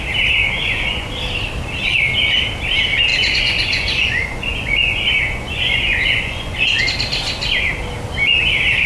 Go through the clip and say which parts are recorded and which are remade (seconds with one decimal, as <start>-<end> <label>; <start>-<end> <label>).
0.0-0.4 recorded; 0.4-1.1 remade; 1.1-3.1 recorded; 3.1-6.8 remade; 6.8-8.9 recorded